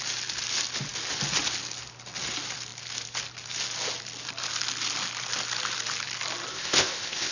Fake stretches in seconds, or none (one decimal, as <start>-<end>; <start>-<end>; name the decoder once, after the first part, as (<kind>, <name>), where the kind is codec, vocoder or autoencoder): 6.5-7.3 (codec, ZipCodec)